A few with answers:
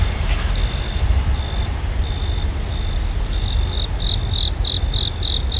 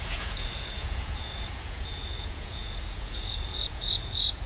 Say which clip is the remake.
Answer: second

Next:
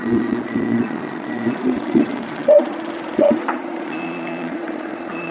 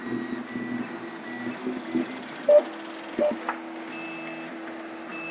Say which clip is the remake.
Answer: first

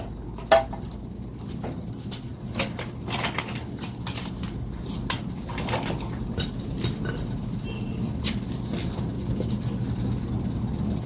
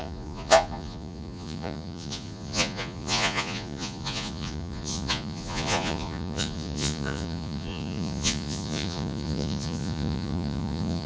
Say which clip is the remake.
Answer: second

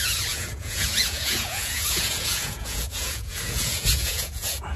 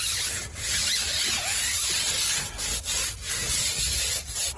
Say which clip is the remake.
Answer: first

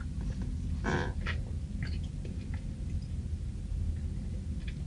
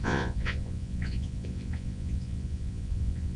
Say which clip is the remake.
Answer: second